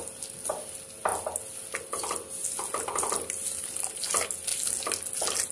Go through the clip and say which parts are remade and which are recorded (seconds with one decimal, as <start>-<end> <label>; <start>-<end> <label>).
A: 0.0-5.5 recorded

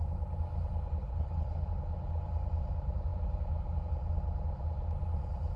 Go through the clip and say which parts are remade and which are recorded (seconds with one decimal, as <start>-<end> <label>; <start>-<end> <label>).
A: 0.0-1.0 recorded; 1.0-1.7 remade; 1.7-5.6 recorded